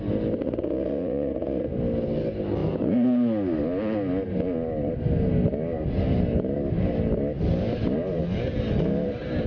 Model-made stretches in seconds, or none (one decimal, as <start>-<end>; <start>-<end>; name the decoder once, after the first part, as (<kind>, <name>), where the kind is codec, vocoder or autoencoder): 0.4-1.7 (vocoder, Vocos)